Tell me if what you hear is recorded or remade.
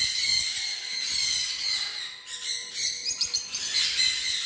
recorded